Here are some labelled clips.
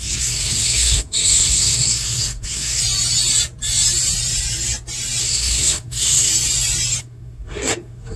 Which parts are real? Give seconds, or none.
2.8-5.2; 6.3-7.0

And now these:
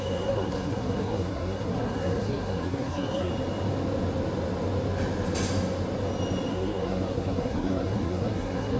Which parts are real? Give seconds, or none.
3.3-6.5

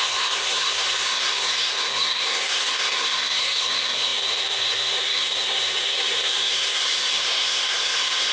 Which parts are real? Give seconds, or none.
none